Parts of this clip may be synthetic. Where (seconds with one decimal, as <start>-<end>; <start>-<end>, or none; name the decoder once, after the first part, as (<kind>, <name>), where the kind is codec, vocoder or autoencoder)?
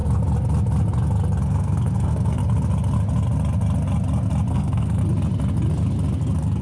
1.4-2.4 (codec, SNAC); 4.5-5.0